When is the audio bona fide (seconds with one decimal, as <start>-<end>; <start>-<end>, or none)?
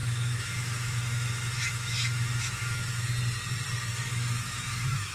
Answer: 3.1-3.9